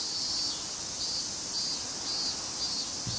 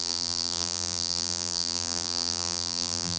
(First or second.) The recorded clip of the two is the first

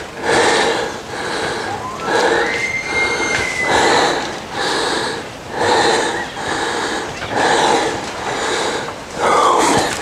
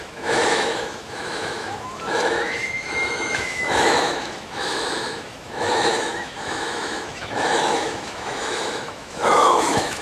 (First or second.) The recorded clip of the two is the first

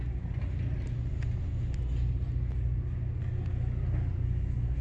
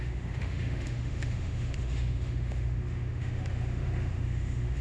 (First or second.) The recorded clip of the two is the first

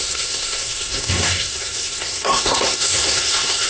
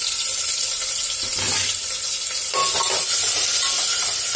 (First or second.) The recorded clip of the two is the second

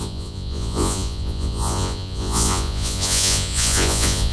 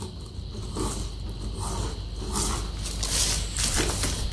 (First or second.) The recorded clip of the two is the second